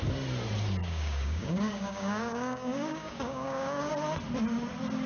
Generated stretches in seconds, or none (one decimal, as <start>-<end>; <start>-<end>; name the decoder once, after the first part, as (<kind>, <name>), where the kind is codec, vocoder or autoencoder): 0.8-3.9 (codec, DAC)